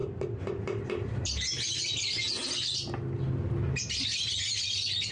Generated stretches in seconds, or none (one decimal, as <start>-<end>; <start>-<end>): none